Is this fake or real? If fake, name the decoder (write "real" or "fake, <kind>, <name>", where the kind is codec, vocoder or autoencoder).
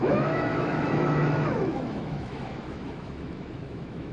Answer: fake, autoencoder, DAC-VAE